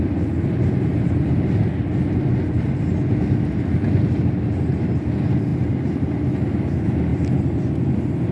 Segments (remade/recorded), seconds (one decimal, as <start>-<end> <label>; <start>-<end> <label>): 0.0-8.3 recorded

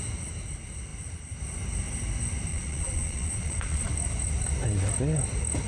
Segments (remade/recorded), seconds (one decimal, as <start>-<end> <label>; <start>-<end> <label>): 0.0-2.5 recorded; 2.5-3.9 remade; 3.9-5.7 recorded

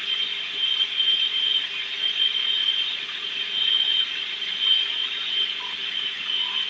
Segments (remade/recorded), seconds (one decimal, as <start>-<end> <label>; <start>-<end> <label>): 0.0-2.3 recorded; 2.3-4.8 remade; 4.8-6.7 recorded

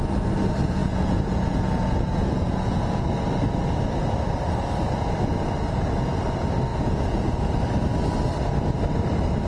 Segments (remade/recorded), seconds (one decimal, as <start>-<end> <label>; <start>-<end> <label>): 0.0-0.8 recorded; 0.8-3.0 remade; 3.0-6.7 recorded; 6.7-7.3 remade; 7.3-9.5 recorded

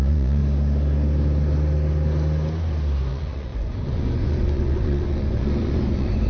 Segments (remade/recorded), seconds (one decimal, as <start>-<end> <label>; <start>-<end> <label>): 0.0-0.4 remade; 0.4-3.1 recorded; 3.1-6.3 remade